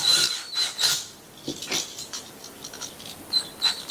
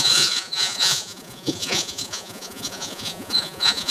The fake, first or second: second